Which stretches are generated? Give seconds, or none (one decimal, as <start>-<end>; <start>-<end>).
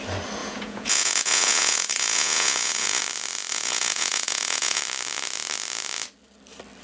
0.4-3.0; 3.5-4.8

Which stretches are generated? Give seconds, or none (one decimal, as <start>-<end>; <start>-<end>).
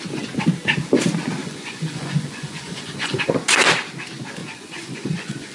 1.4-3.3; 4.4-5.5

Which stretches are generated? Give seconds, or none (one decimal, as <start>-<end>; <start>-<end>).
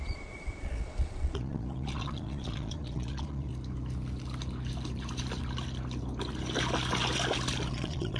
0.0-3.5; 7.7-8.2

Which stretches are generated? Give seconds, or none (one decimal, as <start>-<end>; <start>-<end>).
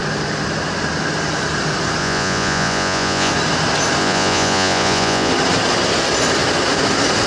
2.0-3.3; 4.0-5.3